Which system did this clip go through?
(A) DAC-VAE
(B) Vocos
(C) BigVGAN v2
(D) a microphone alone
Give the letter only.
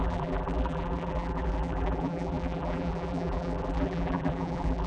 C